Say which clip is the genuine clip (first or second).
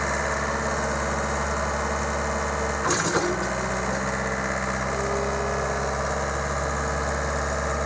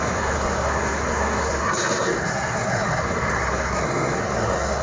first